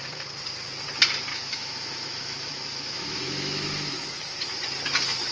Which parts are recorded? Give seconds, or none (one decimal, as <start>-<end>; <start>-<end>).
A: 0.0-1.3; 4.5-5.3